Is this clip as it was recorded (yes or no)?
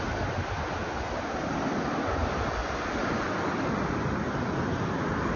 yes